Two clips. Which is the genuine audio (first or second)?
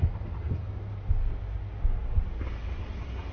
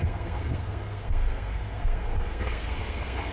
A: first